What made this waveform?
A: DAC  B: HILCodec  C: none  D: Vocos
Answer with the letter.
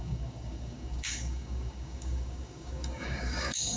A